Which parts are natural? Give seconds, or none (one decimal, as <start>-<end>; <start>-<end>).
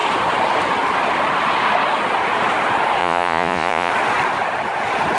0.0-3.0; 3.9-5.2